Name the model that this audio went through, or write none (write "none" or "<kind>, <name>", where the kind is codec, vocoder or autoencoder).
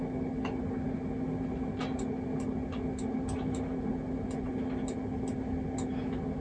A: none